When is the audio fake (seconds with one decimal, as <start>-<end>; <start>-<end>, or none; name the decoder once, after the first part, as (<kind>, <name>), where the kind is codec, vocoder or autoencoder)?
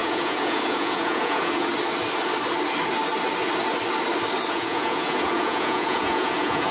0.0-1.7 (vocoder, Vocos); 4.5-6.7